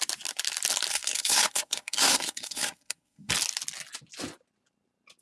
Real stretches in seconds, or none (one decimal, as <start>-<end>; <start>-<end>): 0.0-0.9; 3.3-5.2